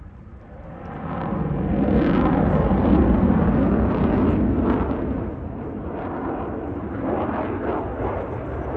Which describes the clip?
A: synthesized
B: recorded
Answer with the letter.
B